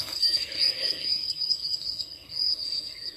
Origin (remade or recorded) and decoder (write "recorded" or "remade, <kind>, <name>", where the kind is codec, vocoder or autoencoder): remade, codec, SNAC